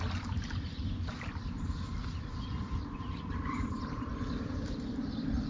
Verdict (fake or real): real